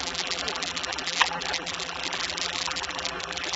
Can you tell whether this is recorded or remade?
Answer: remade